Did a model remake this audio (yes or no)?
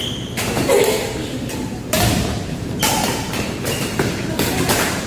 yes